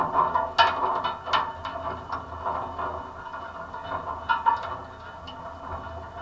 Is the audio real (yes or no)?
yes